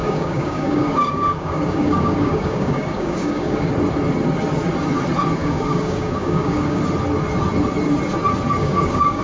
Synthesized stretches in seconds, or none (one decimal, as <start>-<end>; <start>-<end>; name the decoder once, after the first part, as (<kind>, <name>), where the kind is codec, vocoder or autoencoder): 0.0-3.7 (codec, DAC); 5.4-6.8; 8.6-9.2